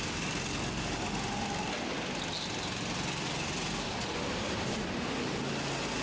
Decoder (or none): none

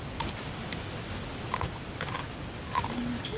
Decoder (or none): none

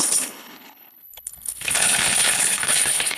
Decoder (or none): codec, HILCodec